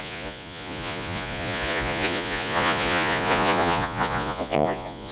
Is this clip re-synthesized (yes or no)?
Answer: yes